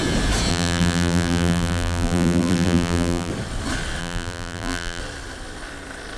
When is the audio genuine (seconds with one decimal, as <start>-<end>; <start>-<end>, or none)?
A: 0.0-0.5; 3.3-4.0; 5.0-6.2